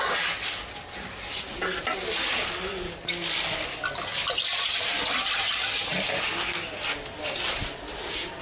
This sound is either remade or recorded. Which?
recorded